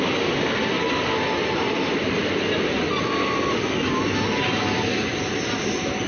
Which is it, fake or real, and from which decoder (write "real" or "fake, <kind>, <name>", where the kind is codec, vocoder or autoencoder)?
real